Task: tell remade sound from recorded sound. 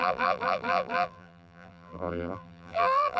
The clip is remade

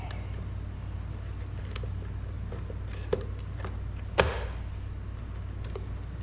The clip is recorded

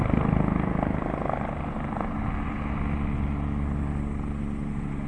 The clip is recorded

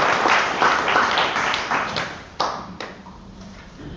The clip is remade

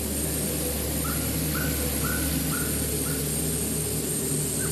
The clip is recorded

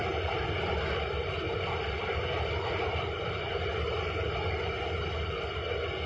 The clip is recorded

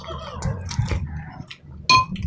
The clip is recorded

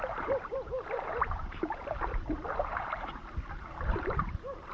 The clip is remade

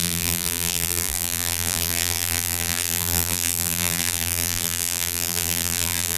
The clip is remade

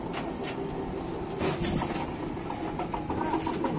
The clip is recorded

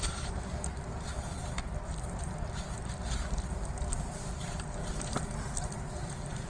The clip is remade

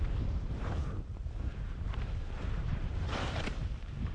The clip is remade